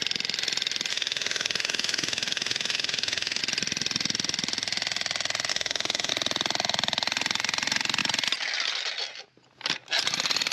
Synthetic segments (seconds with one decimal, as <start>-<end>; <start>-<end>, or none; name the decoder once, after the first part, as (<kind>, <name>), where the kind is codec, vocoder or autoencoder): 0.9-3.4 (autoencoder, DAC-VAE); 5.5-6.1